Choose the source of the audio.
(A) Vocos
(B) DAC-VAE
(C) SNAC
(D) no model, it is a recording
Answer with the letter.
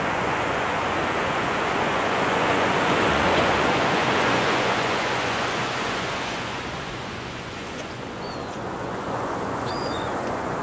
A